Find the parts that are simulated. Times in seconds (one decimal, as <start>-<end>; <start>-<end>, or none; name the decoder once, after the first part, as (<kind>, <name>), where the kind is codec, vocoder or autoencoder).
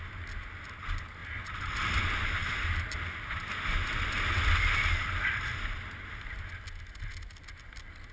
none